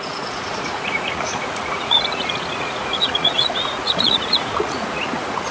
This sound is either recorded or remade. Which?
remade